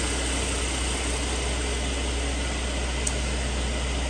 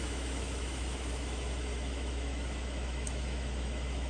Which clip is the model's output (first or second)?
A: second